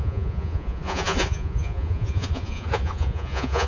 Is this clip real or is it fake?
fake